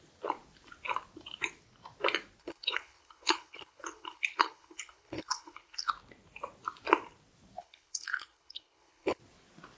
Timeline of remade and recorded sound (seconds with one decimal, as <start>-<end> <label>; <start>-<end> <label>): 0.0-2.4 recorded; 2.4-5.9 remade; 5.9-7.6 recorded; 7.6-9.2 remade; 9.2-9.8 recorded